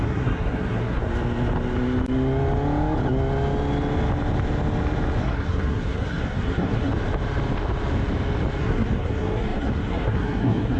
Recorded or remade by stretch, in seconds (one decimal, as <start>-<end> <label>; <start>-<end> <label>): 0.0-1.0 remade; 1.0-5.2 recorded; 5.2-6.9 remade; 6.9-8.6 recorded; 8.6-10.8 remade